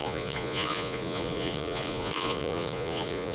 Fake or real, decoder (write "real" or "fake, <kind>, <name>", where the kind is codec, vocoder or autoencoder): fake, vocoder, Vocos